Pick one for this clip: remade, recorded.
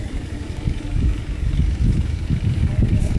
remade